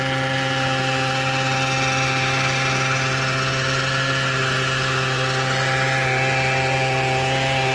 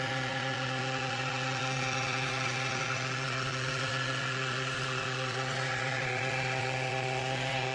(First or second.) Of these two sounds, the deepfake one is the second